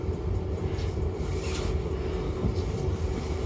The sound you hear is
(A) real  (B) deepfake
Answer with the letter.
B